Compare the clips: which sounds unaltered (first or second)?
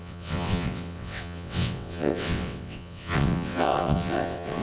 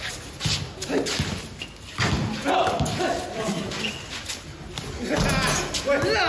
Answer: second